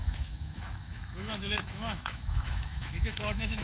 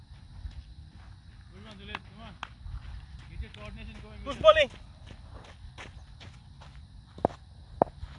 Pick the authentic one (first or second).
second